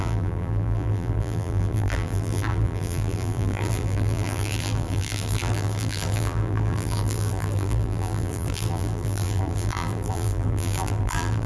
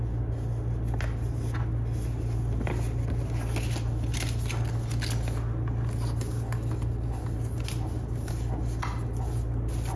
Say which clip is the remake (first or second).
first